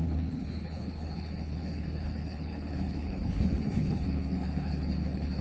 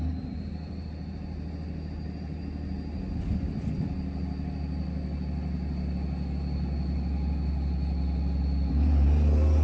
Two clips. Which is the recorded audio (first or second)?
second